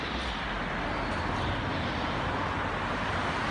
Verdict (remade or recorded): recorded